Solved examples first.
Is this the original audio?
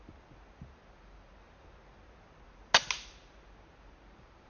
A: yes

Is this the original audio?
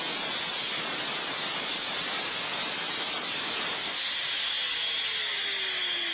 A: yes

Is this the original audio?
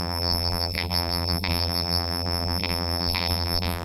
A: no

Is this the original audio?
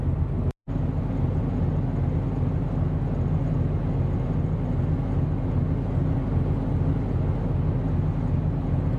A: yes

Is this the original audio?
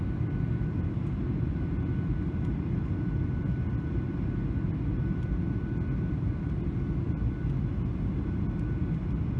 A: yes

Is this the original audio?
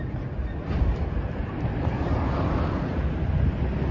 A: yes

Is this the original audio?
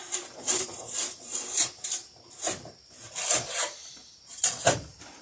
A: no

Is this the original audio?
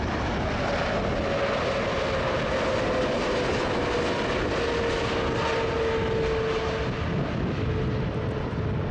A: yes